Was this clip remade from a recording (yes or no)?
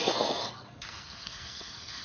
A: yes